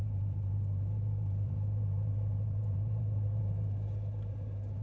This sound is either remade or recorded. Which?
remade